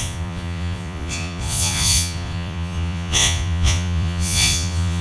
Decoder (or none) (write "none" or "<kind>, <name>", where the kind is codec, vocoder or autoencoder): vocoder, Vocos